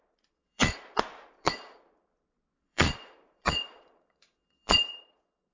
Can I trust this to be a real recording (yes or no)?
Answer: no